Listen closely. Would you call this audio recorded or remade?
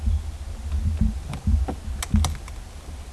recorded